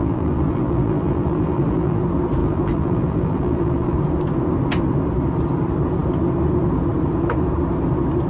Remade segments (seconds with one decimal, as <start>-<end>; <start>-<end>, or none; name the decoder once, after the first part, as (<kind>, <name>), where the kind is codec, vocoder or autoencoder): 0.0-2.0 (vocoder, BigVGAN v2); 2.4-4.0